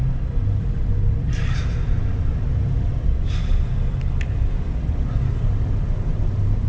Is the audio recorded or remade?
recorded